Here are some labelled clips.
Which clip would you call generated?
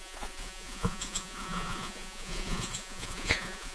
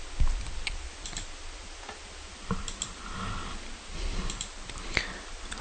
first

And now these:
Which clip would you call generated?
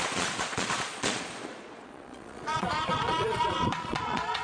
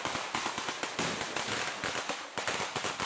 first